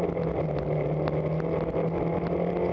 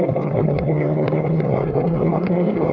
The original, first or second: first